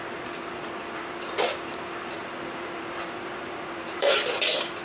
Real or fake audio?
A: fake